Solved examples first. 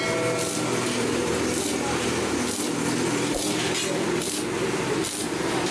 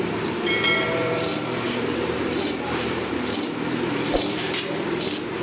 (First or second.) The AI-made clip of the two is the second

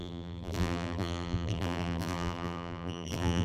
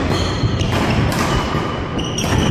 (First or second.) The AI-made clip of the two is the first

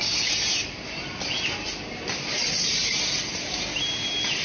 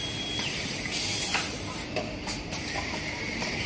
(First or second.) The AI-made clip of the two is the second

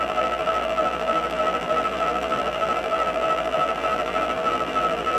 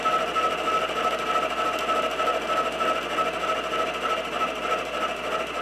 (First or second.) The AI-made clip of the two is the first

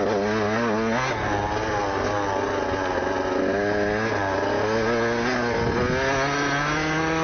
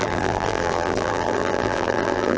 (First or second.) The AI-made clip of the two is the second